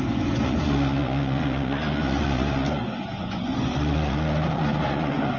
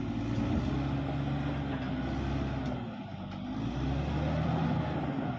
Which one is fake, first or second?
first